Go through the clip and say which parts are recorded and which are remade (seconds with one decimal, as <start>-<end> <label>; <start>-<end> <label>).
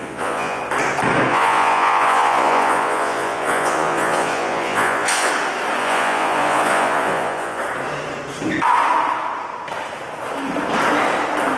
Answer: 0.0-0.6 remade; 0.6-1.3 recorded; 1.3-5.3 remade; 5.3-5.8 recorded; 5.8-7.6 remade; 7.6-11.6 recorded